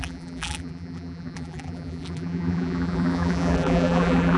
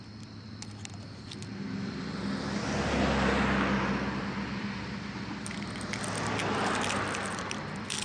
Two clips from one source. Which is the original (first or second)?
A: second